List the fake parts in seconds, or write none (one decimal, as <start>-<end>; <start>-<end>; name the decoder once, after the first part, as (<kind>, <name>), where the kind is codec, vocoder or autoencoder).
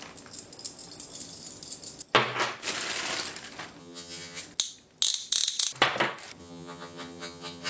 3.8-4.4 (vocoder, HiFi-GAN); 6.4-7.7